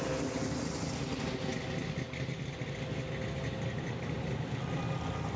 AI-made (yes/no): no